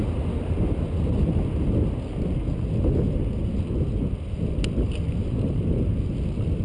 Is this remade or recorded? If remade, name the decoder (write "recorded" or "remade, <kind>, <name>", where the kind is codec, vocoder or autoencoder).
recorded